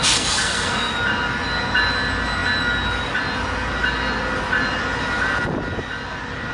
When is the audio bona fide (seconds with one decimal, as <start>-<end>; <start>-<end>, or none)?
0.9-6.5